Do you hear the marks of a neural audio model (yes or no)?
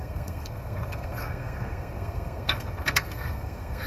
yes